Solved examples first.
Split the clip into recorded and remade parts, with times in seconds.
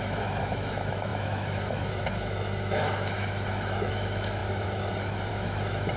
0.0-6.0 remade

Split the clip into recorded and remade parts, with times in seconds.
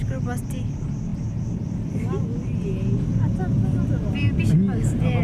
0.0-5.2 recorded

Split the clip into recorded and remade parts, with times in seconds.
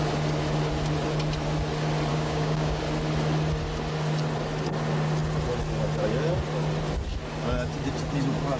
0.0-2.1 recorded; 2.1-2.8 remade; 2.8-8.6 recorded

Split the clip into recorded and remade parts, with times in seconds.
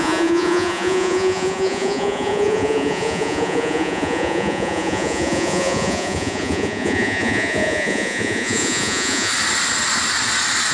0.0-9.3 remade; 9.3-10.7 recorded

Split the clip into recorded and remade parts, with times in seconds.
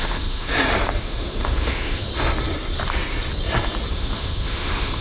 0.0-0.5 remade; 0.5-1.0 recorded; 1.0-2.1 remade; 2.1-3.9 recorded; 3.9-5.0 remade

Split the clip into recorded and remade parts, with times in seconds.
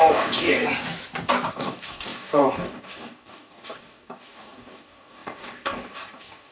0.0-0.6 remade; 0.6-1.5 recorded; 1.5-6.5 remade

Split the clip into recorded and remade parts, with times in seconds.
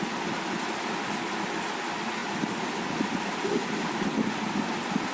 0.0-5.1 recorded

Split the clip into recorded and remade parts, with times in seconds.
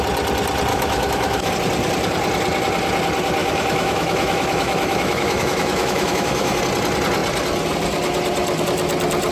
0.0-0.7 recorded; 0.7-1.5 remade; 1.5-3.4 recorded; 3.4-6.6 remade; 6.6-9.3 recorded